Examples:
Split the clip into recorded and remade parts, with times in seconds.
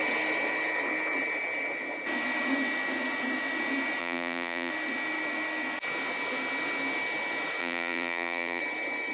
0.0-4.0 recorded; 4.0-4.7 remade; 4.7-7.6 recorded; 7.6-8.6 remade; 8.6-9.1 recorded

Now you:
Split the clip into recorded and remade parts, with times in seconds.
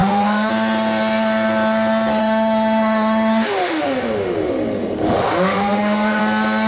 0.0-0.5 remade; 0.5-2.2 recorded; 2.2-6.2 remade; 6.2-6.7 recorded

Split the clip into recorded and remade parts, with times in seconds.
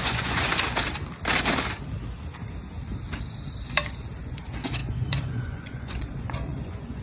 0.0-0.5 remade; 0.5-4.2 recorded; 4.2-7.0 remade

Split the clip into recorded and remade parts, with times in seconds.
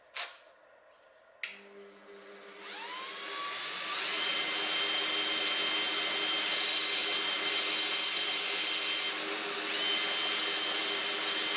0.0-7.0 recorded; 7.0-8.7 remade; 8.7-11.6 recorded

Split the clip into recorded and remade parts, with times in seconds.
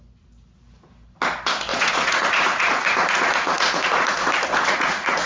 0.0-1.7 recorded; 1.7-5.3 remade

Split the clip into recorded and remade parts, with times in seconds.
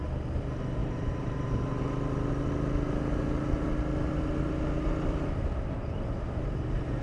0.0-0.8 recorded; 0.8-1.8 remade; 1.8-7.0 recorded